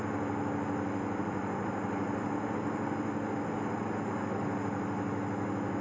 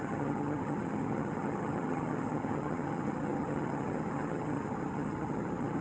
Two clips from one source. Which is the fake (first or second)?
second